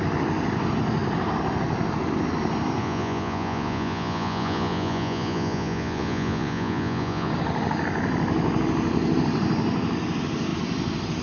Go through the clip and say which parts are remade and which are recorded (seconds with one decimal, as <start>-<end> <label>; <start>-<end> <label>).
0.0-2.8 recorded; 2.8-7.3 remade; 7.3-11.2 recorded